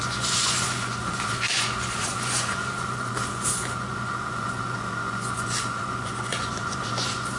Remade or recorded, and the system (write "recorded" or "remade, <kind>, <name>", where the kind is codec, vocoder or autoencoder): remade, vocoder, Vocos